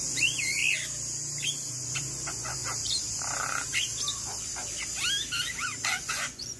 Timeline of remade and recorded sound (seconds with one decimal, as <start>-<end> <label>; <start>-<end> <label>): 0.0-0.6 remade; 0.6-1.7 recorded; 1.7-2.6 remade; 2.6-5.9 recorded; 5.9-6.6 remade